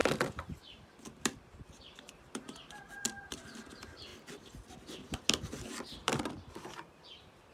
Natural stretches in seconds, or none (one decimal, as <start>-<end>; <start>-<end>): 4.1-5.7